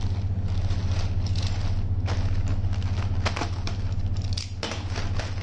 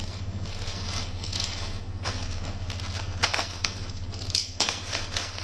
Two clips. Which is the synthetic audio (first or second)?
second